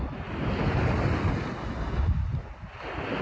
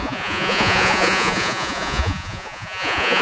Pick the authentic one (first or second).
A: first